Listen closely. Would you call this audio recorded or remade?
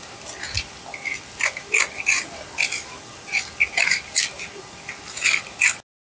recorded